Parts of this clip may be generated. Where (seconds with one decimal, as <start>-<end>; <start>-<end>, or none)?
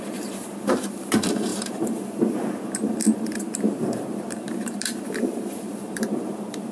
0.0-6.7